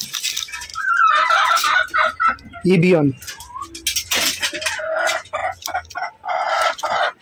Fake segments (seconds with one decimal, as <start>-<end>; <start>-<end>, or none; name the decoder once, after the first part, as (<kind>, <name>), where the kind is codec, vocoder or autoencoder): none